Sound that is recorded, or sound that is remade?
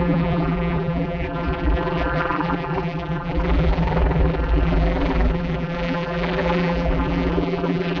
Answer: remade